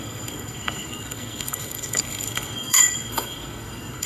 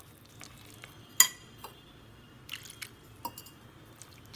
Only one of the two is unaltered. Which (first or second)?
second